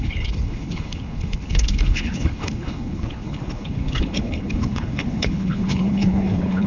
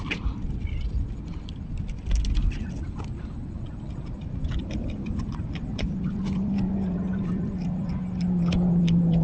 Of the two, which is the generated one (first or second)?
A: first